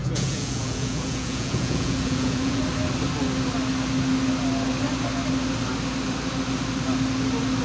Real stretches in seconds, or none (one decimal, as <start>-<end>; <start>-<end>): 2.6-7.6